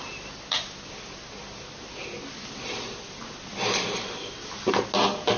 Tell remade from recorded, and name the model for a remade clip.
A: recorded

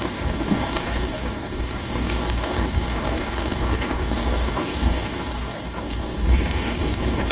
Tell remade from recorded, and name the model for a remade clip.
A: remade, codec, DAC